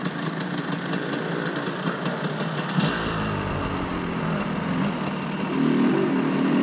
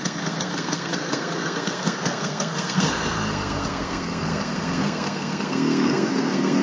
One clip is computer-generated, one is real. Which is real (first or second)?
first